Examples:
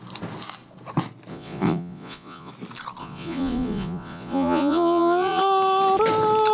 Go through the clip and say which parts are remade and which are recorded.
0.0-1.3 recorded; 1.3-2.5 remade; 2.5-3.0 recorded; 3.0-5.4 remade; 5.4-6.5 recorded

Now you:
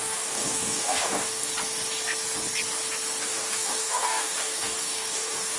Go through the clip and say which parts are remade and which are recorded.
0.0-1.5 remade; 1.5-3.2 recorded; 3.2-5.6 remade

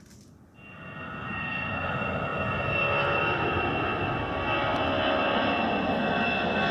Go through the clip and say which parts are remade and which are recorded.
0.0-1.3 recorded; 1.3-1.9 remade; 1.9-6.7 recorded

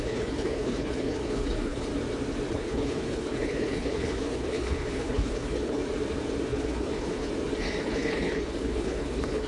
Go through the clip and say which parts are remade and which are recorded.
0.0-1.9 remade; 1.9-2.5 recorded; 2.5-5.8 remade; 5.8-6.5 recorded; 6.5-7.3 remade; 7.3-7.8 recorded; 7.8-9.5 remade

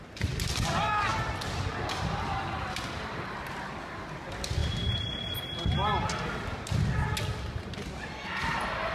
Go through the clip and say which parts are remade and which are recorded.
0.0-8.9 recorded

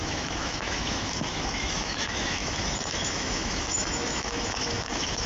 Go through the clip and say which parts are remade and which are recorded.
0.0-5.3 remade

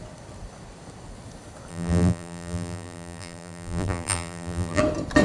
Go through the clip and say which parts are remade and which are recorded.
0.0-1.7 recorded; 1.7-4.8 remade; 4.8-5.2 recorded

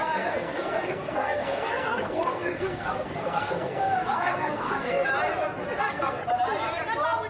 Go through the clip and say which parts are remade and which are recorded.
0.0-5.1 remade; 5.1-5.8 recorded; 5.8-6.2 remade; 6.2-7.3 recorded